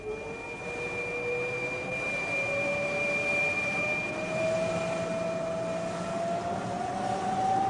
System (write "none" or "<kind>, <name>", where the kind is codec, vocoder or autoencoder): none